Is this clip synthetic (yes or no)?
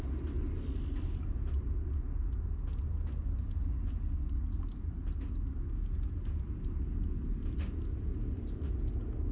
no